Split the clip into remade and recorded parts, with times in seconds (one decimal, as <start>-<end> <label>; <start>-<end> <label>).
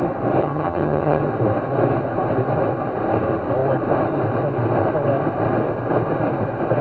0.0-0.4 recorded; 0.4-1.2 remade; 1.2-6.8 recorded